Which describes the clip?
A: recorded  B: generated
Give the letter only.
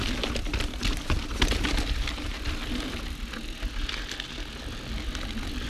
A